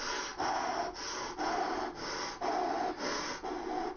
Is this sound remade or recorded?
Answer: recorded